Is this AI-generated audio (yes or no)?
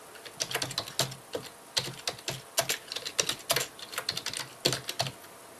no